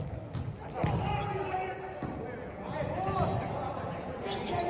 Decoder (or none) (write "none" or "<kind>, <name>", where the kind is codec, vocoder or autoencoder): none